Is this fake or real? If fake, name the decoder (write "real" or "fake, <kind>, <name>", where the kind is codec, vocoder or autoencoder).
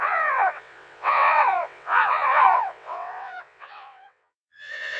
fake, vocoder, WaveNeXt